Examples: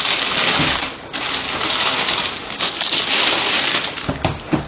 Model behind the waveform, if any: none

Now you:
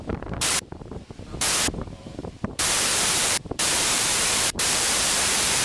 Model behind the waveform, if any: vocoder, BigVGAN v2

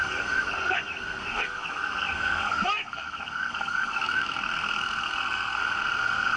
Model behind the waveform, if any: codec, SNAC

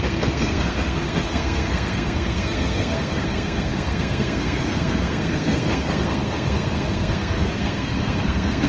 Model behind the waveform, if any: codec, SNAC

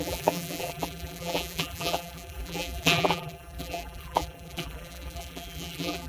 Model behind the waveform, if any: vocoder, BigVGAN v2